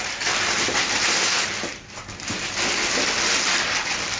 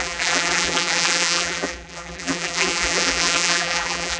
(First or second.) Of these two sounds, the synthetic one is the second